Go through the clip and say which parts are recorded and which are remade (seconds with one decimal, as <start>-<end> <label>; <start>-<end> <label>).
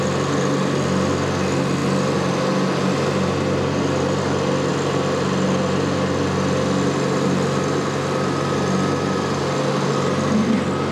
0.0-10.9 recorded